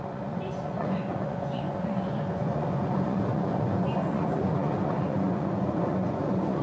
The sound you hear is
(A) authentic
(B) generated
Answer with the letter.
B